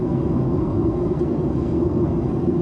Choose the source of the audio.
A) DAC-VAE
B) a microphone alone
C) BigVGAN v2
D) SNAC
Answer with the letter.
D